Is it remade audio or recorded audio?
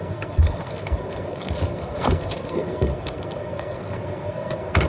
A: remade